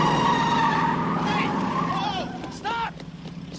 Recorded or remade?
remade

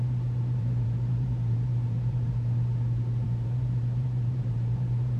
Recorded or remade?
remade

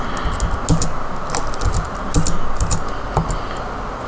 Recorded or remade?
recorded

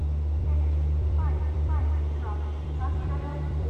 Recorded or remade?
remade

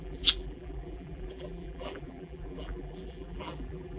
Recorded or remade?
remade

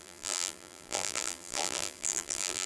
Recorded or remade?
remade